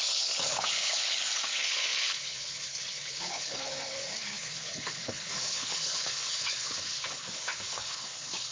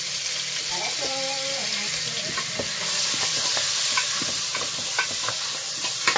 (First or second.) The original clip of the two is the second